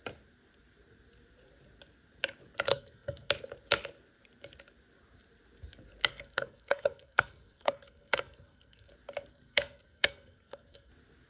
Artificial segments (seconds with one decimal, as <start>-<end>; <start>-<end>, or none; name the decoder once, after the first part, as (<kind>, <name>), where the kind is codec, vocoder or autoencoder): 2.7-3.3 (codec, SNAC); 6.1-8.9; 9.3-10.9